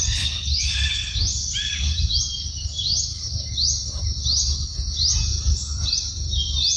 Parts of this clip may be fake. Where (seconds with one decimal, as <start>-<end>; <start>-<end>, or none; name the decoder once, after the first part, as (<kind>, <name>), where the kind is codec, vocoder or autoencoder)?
0.0-2.1 (vocoder, BigVGAN v2)